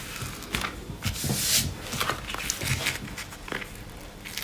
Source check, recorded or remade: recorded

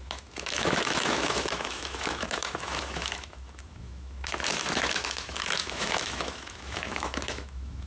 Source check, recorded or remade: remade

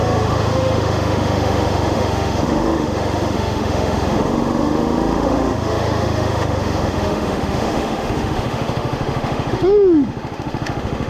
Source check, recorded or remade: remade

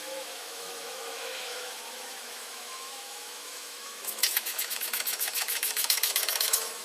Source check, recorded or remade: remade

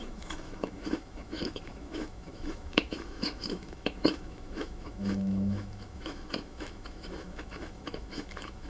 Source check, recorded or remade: remade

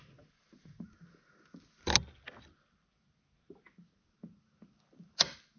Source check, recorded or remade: recorded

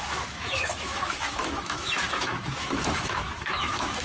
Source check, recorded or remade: remade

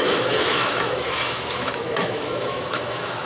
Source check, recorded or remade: remade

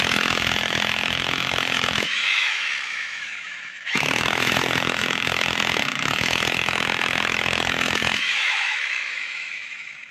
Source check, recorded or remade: remade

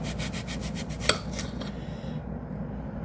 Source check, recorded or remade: recorded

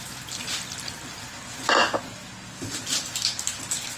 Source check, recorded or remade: recorded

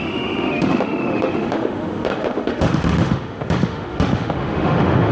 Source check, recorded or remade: remade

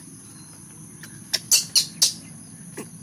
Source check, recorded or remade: recorded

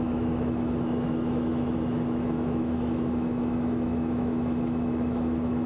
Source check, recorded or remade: remade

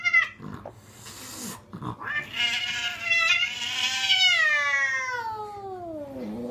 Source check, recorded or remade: recorded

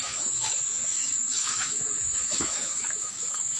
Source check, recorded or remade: remade